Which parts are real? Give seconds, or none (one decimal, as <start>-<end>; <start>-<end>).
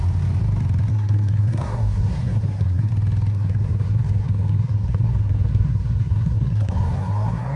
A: 0.0-0.9; 2.9-3.3